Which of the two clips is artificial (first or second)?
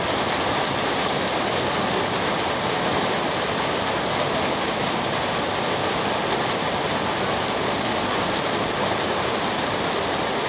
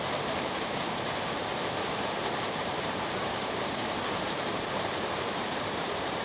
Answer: second